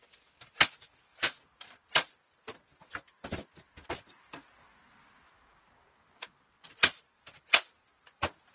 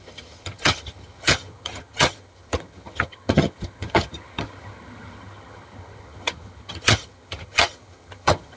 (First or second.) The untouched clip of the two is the first